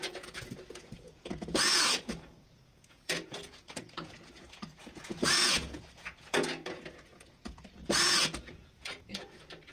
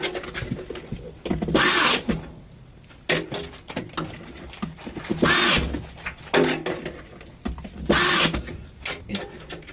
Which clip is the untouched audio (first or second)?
second